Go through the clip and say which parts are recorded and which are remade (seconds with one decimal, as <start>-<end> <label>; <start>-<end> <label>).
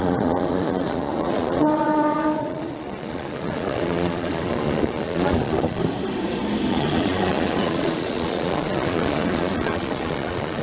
0.0-5.8 remade; 5.8-6.7 recorded; 6.7-10.6 remade